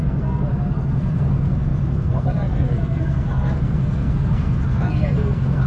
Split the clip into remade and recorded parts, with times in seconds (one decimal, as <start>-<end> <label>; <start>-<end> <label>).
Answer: 0.0-5.7 remade